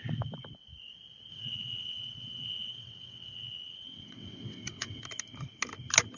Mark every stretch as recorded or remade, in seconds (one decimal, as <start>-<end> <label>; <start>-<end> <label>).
0.0-1.3 recorded; 1.3-5.0 remade; 5.0-6.2 recorded